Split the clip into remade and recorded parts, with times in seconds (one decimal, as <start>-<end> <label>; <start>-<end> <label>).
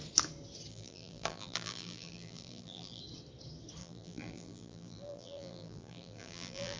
0.0-0.7 recorded; 0.7-3.0 remade; 3.0-3.8 recorded; 3.8-6.8 remade